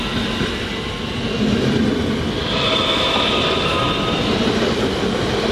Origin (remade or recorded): recorded